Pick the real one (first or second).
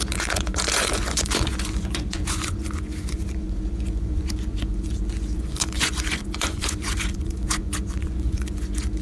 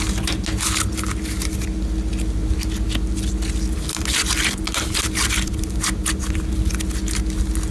second